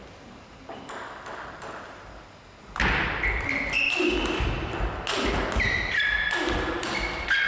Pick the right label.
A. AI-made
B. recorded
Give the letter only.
B